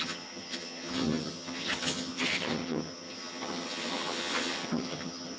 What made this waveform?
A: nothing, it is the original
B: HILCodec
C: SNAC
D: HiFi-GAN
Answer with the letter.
D